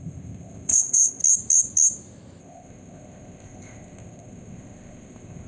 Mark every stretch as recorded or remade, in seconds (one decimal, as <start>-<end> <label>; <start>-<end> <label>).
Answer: 0.0-1.2 remade; 1.2-2.4 recorded; 2.4-5.5 remade